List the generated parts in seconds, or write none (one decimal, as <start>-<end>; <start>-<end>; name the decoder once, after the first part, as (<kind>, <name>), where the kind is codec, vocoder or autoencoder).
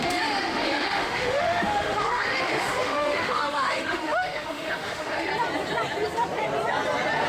0.0-5.3 (autoencoder, DAC-VAE)